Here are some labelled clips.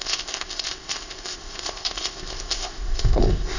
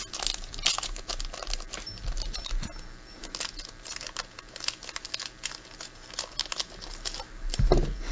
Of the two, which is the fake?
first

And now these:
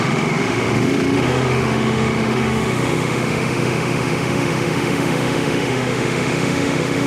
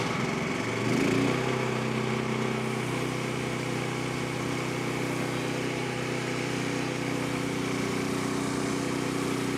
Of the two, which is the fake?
first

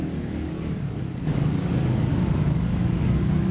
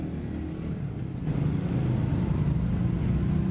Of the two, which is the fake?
first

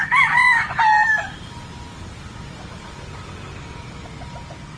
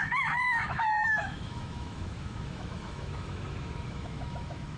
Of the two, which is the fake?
second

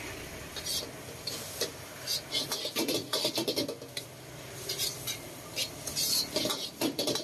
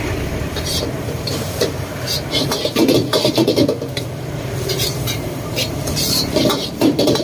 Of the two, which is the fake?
second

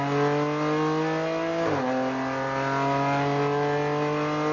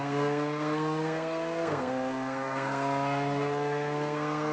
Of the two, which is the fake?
second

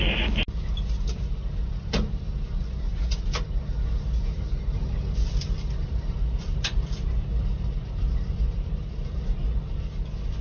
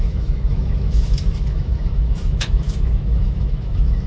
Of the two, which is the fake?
second